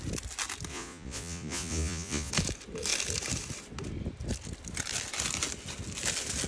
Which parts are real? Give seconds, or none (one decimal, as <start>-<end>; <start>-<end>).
0.0-0.7; 2.3-6.5